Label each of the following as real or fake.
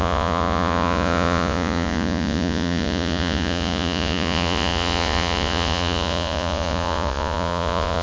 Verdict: fake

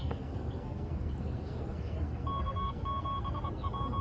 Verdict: fake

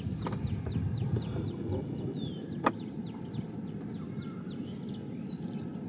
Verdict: real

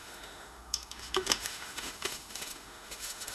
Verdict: fake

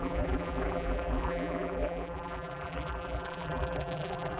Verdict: fake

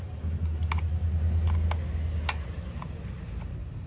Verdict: real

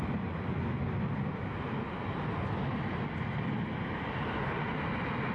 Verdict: real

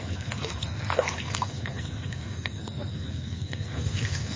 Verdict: fake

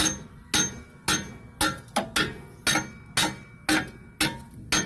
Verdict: real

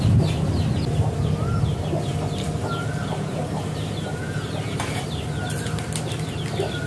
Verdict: real